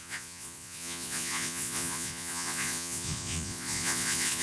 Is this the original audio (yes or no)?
no